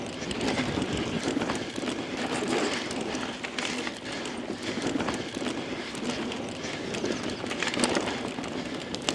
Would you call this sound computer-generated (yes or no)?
no